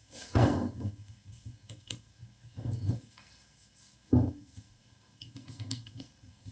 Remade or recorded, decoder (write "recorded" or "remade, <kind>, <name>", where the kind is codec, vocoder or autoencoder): remade, codec, SNAC